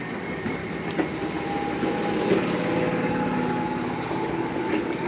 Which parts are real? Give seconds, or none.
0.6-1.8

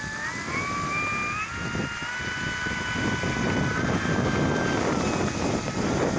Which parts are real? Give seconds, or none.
0.0-6.2

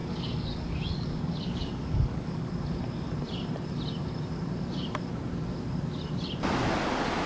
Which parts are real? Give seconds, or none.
2.5-7.3

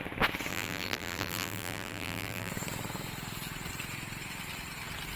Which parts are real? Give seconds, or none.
0.0-0.5; 2.5-5.2

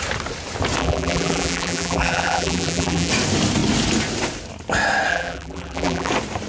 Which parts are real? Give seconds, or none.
0.0-0.8; 3.1-5.1; 6.1-6.5

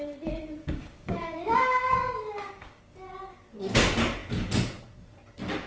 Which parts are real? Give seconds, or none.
0.0-0.6; 2.8-5.7

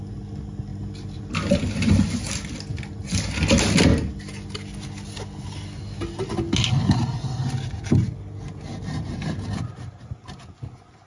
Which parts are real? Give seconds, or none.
0.0-11.1